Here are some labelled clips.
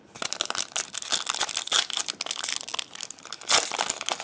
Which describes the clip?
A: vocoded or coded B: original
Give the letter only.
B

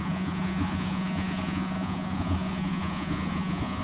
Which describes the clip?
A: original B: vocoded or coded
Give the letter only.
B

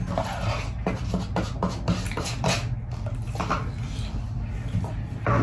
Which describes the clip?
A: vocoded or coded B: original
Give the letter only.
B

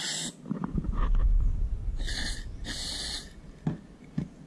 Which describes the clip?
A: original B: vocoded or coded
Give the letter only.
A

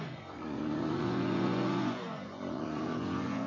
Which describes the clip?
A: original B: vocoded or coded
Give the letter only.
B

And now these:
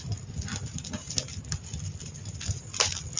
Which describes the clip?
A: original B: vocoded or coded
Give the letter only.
A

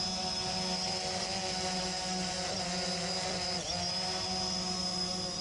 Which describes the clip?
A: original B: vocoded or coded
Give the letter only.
A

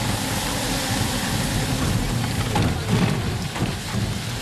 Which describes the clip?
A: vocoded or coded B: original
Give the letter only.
B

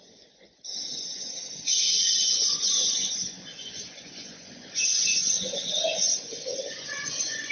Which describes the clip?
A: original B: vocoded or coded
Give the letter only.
B